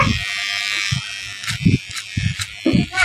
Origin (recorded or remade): recorded